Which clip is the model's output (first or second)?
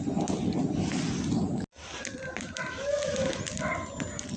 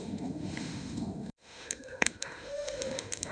second